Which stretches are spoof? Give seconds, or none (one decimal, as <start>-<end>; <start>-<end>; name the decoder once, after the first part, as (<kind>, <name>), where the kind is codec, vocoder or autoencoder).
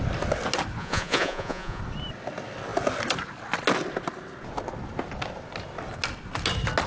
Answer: 0.8-1.8 (vocoder, Vocos)